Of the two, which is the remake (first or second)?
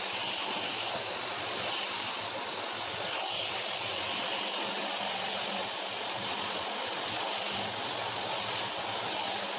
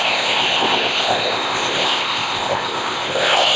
second